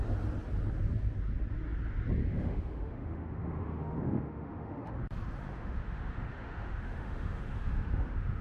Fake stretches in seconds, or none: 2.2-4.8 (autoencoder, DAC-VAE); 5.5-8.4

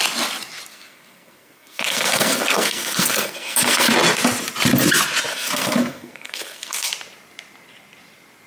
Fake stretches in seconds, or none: 0.7-3.9 (codec, SNAC); 5.3-6.9